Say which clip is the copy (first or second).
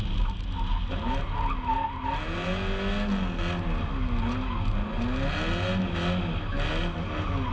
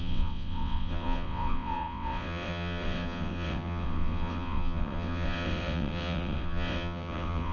second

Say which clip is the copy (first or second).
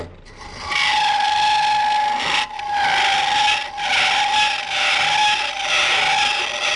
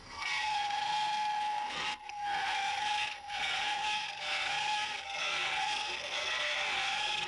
second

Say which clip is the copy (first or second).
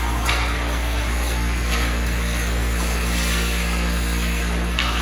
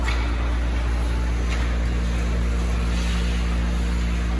first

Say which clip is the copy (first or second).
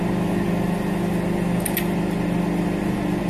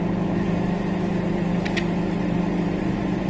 second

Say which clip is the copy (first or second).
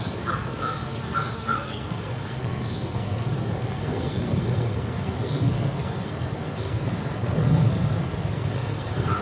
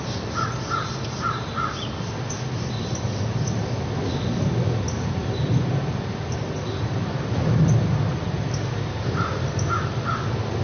first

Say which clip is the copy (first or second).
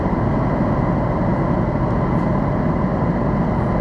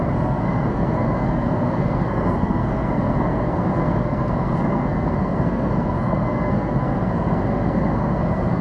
second